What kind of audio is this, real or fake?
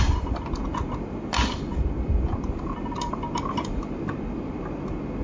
real